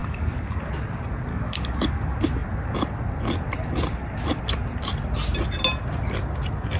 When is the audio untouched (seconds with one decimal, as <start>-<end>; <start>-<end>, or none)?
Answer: 0.7-1.3; 2.0-6.8